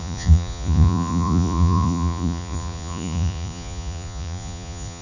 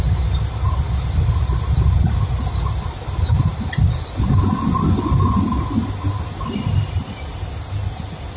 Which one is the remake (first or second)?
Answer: first